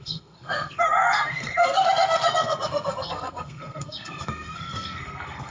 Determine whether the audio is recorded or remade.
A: remade